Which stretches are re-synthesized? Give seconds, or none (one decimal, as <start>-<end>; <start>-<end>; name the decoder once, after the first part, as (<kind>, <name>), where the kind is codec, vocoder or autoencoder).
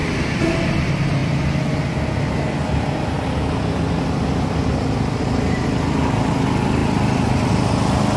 none